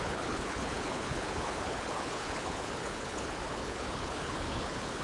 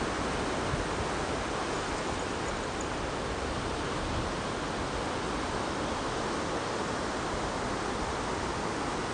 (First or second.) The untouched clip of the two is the second